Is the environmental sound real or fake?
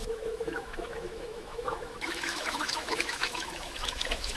fake